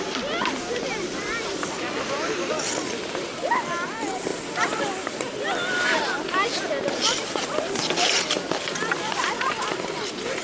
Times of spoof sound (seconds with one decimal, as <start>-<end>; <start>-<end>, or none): none